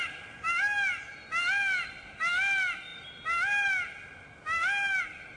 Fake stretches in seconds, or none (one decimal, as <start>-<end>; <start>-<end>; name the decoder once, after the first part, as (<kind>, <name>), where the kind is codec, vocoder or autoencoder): none

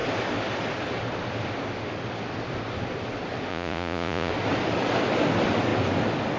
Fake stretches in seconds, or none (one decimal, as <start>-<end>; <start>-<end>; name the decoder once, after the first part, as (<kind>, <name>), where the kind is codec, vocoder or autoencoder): 3.5-4.3 (vocoder, Vocos)

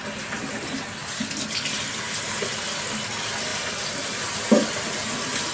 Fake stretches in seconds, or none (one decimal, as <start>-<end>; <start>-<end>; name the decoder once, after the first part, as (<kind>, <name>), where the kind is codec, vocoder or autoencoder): none

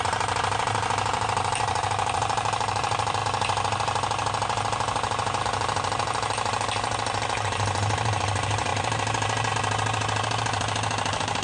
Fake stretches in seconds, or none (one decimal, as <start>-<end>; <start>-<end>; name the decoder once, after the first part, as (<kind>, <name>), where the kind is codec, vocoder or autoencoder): 0.0-3.2 (vocoder, BigVGAN v2); 5.4-11.4

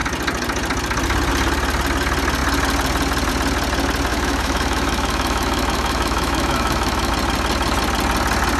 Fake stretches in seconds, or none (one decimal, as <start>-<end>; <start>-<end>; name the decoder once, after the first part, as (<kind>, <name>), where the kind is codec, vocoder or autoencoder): 4.1-7.1 (autoencoder, DAC-VAE)

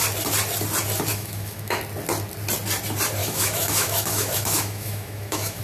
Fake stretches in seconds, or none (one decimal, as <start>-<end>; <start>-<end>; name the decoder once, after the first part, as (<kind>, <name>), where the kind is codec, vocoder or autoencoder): 1.1-1.8 (autoencoder, DAC-VAE); 3.2-5.6

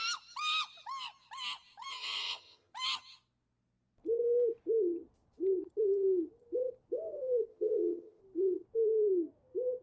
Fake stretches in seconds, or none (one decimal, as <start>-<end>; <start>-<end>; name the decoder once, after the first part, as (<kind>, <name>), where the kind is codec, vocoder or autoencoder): 1.9-2.7 (vocoder, HiFi-GAN); 7.5-8.2

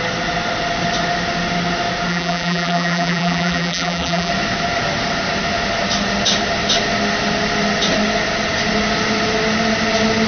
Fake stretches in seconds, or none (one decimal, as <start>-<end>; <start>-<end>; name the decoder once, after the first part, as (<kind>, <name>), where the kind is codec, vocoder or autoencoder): 2.1-4.3 (vocoder, BigVGAN v2)